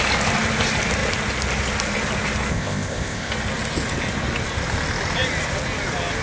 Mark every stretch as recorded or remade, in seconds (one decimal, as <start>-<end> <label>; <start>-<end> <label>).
0.0-2.5 recorded; 2.5-3.3 remade; 3.3-6.2 recorded